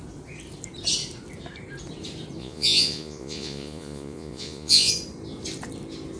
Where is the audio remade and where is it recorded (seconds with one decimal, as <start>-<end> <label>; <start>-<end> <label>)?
0.0-2.4 recorded; 2.4-4.9 remade; 4.9-6.2 recorded